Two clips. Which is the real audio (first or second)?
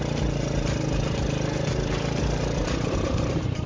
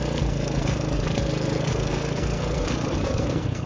first